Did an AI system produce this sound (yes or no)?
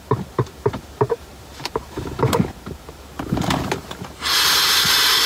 yes